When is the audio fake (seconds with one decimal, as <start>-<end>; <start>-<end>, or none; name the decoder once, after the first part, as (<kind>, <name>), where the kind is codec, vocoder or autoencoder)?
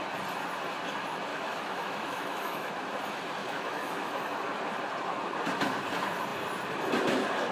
1.3-2.7 (autoencoder, DAC-VAE); 3.4-4.1